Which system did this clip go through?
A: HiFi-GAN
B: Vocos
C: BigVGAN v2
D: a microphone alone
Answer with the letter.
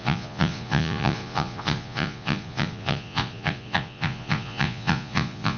B